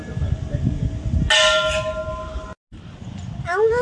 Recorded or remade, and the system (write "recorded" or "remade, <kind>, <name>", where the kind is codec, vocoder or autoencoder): recorded